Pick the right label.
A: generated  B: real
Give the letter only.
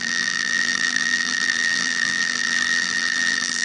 A